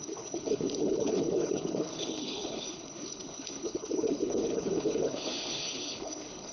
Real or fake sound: fake